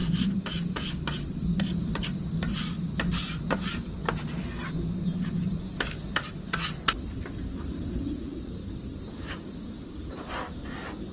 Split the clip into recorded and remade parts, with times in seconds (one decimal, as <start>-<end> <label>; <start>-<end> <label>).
0.0-3.1 remade; 3.1-5.6 recorded; 5.6-8.3 remade; 8.3-9.1 recorded; 9.1-11.1 remade

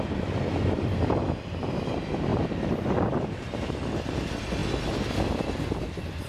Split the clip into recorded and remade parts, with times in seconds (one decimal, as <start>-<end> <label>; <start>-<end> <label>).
0.0-2.3 recorded; 2.3-3.5 remade; 3.5-6.3 recorded

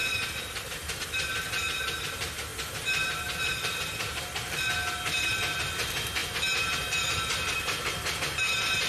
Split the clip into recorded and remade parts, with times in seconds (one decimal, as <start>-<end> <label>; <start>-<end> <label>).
0.0-8.9 recorded

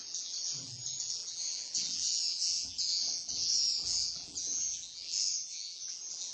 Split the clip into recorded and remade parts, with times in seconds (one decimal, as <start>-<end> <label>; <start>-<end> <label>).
0.0-6.3 remade

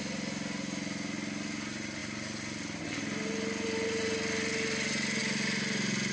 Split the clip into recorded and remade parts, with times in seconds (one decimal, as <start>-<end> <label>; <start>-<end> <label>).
0.0-2.0 recorded; 2.0-2.8 remade; 2.8-5.2 recorded; 5.2-6.1 remade

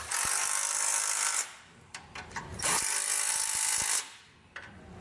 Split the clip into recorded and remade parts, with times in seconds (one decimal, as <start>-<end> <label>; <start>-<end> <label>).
0.0-0.9 recorded; 0.9-2.0 remade; 2.0-2.5 recorded; 2.5-3.3 remade; 3.3-5.0 recorded

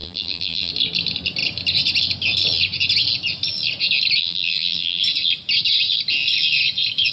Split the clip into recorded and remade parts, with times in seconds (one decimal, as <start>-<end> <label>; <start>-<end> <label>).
0.0-0.7 remade; 0.7-4.2 recorded; 4.2-5.0 remade; 5.0-7.1 recorded

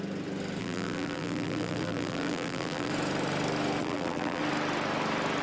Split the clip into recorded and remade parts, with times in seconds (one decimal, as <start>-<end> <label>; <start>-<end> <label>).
0.0-0.6 recorded; 0.6-2.9 remade; 2.9-3.8 recorded; 3.8-4.4 remade; 4.4-5.4 recorded